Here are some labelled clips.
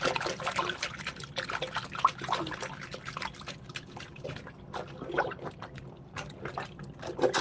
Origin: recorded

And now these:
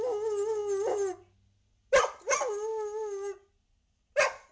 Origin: recorded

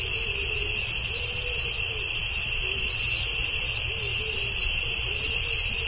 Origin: recorded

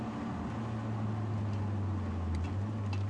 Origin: recorded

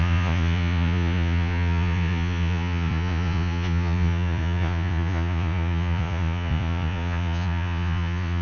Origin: remade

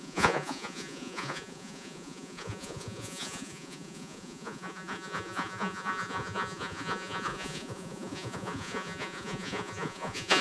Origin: remade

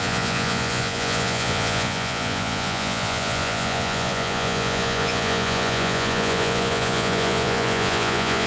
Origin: remade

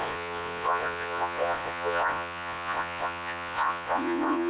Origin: remade